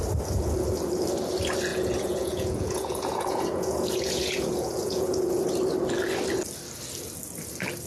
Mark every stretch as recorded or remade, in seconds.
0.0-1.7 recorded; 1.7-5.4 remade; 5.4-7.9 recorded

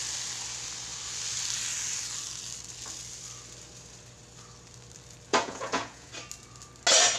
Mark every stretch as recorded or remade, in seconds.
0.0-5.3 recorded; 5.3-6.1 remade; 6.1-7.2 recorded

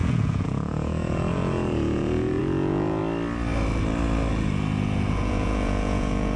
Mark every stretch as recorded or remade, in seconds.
0.0-3.0 remade; 3.0-5.1 recorded; 5.1-6.4 remade

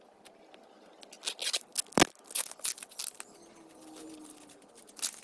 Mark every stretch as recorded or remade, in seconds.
0.0-5.2 recorded

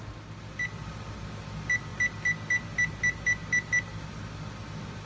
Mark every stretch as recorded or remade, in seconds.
0.0-5.1 recorded